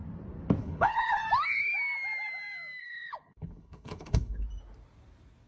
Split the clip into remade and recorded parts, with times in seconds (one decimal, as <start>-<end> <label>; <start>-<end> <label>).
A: 0.0-0.6 recorded; 0.6-1.2 remade; 1.2-2.8 recorded; 2.8-4.4 remade; 4.4-5.5 recorded